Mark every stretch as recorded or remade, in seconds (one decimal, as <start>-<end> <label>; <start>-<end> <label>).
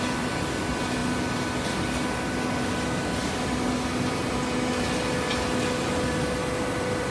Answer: 0.0-7.1 recorded